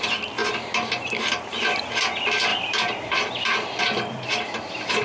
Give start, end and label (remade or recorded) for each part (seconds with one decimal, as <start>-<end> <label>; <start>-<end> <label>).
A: 0.0-5.0 recorded